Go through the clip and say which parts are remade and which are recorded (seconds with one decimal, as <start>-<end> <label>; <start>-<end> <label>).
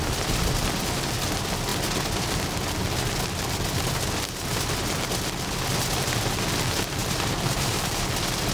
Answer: 0.0-7.0 recorded; 7.0-8.1 remade; 8.1-8.5 recorded